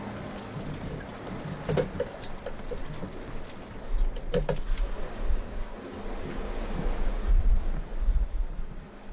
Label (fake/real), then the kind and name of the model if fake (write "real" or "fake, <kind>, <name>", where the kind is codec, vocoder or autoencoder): real